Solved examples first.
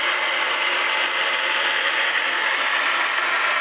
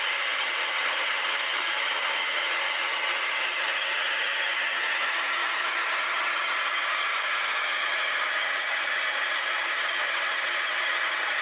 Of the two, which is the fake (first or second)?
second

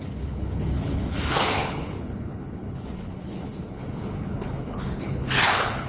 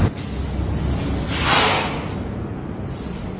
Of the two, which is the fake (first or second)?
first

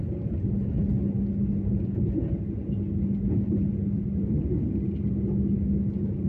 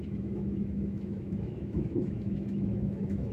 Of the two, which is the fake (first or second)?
second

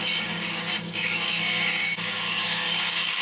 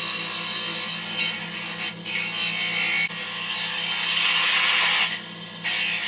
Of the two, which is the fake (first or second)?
first